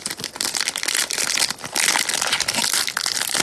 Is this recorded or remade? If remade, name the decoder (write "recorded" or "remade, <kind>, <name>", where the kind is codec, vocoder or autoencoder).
recorded